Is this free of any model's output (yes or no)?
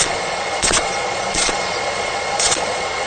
no